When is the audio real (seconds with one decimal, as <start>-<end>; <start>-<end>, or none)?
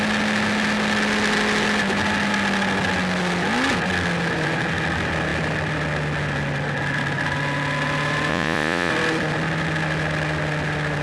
0.0-8.3; 8.9-11.0